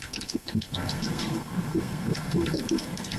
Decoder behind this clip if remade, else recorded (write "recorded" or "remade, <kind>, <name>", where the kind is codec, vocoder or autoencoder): remade, codec, SNAC